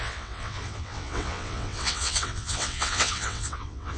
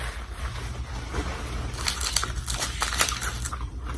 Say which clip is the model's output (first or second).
first